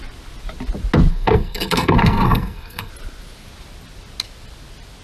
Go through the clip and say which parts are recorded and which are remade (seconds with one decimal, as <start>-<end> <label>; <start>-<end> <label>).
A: 0.0-1.1 recorded; 1.1-2.9 remade; 2.9-5.0 recorded